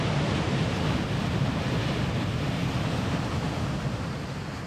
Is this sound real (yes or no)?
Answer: yes